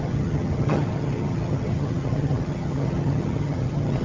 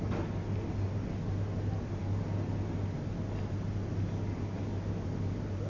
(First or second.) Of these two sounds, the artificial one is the first